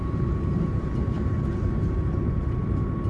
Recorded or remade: recorded